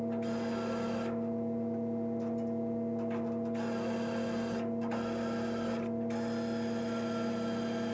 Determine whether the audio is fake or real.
real